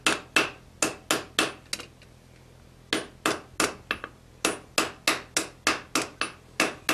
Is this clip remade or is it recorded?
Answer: recorded